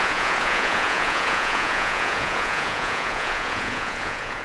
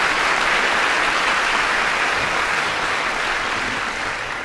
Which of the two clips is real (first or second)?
second